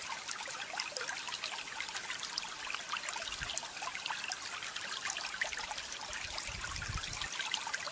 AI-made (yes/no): no